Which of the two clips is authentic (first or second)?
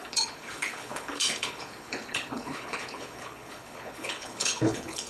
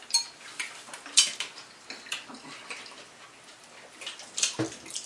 second